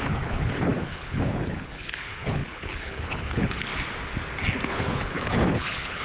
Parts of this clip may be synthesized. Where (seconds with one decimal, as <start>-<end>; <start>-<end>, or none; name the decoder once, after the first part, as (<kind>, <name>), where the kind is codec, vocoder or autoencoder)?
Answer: 0.0-3.7 (codec, HILCodec); 4.7-6.0